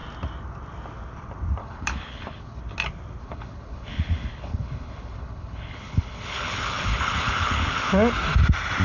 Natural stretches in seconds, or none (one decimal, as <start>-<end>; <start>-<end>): 0.0-1.6; 2.6-3.2; 7.9-8.8